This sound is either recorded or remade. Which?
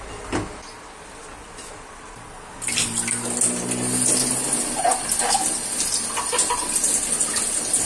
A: recorded